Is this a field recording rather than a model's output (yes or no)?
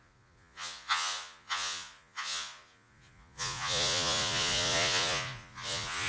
no